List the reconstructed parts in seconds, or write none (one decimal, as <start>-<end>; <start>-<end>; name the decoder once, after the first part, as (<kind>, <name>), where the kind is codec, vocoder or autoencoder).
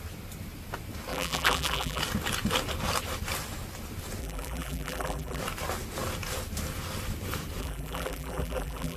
1.1-2.0 (vocoder, BigVGAN v2); 4.2-5.4; 7.6-9.0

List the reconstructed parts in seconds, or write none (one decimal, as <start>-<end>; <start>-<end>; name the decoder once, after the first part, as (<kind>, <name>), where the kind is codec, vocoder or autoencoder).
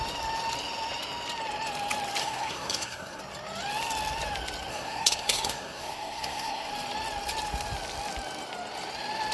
2.2-3.2 (codec, SNAC); 4.7-6.7